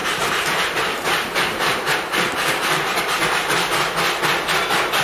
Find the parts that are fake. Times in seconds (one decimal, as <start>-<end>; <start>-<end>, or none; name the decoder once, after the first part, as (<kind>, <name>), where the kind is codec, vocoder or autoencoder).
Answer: 0.0-3.0 (vocoder, BigVGAN v2)